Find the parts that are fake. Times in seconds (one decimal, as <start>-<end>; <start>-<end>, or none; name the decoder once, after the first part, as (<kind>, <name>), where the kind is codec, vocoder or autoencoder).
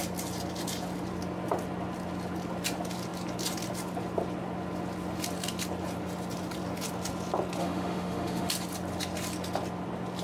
7.6-8.5 (autoencoder, DAC-VAE)